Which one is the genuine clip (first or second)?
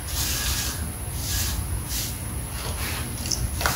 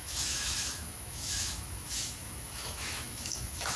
first